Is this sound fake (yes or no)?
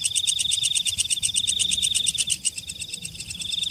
no